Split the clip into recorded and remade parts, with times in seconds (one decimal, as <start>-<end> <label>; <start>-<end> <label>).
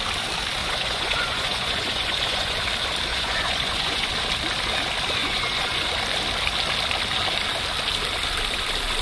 0.0-0.6 recorded; 0.6-2.7 remade; 2.7-3.1 recorded; 3.1-4.1 remade; 4.1-5.2 recorded; 5.2-5.9 remade; 5.9-9.0 recorded